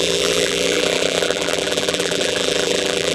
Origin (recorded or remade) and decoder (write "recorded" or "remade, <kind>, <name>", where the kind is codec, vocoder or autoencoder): remade, vocoder, BigVGAN v2